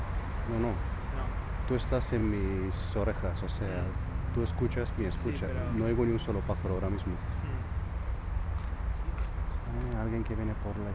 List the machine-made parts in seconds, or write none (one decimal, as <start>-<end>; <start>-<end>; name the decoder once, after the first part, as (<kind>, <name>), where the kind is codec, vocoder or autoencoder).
none